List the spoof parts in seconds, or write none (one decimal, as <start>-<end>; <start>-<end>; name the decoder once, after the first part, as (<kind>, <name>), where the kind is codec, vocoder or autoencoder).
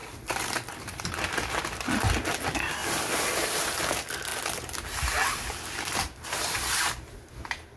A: 0.0-1.0 (vocoder, BigVGAN v2); 2.8-3.7